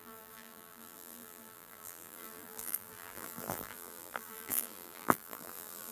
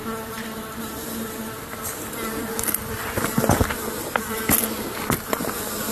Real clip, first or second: second